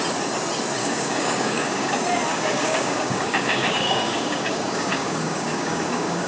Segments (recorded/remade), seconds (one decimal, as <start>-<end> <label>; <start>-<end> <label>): 0.0-0.8 recorded; 0.8-1.9 remade; 1.9-2.3 recorded; 2.3-6.3 remade